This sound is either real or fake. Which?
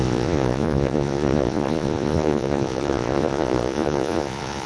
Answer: fake